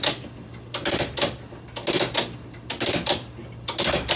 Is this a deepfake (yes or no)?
no